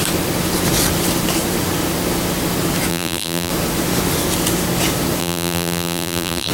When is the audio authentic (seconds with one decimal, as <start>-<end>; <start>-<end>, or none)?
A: 0.0-2.9; 3.5-5.2

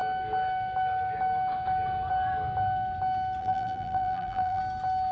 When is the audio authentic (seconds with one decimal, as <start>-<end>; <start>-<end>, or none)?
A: 0.0-3.4; 4.6-5.1

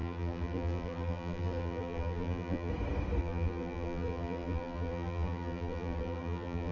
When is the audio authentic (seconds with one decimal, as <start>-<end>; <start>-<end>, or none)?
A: 2.7-3.2